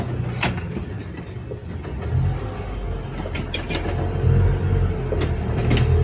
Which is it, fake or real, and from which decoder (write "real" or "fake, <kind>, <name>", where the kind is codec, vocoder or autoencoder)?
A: real